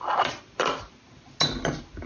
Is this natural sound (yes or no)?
yes